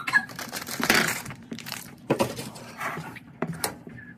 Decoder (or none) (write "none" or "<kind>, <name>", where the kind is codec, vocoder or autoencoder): vocoder, BigVGAN v2